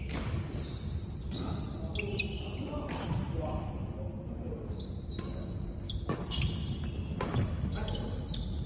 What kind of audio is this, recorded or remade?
recorded